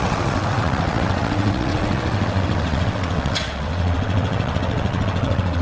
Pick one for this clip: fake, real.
fake